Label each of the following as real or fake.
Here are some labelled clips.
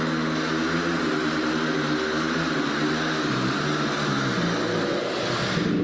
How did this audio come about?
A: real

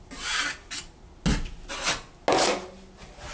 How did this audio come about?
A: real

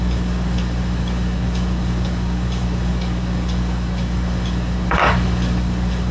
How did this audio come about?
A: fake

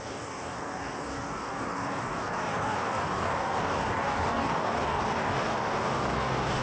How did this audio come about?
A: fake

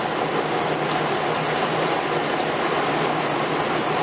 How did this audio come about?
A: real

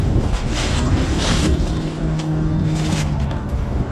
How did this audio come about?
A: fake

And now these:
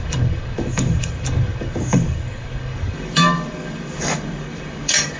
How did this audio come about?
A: fake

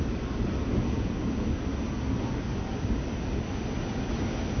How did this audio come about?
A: real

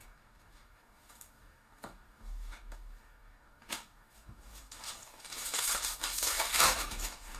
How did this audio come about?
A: fake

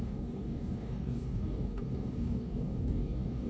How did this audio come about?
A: fake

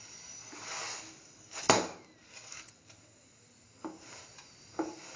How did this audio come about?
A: real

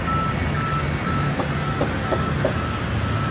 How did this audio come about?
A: real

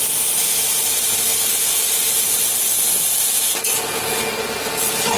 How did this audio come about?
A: real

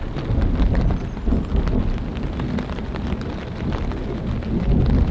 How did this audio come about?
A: real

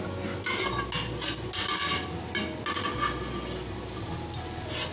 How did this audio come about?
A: real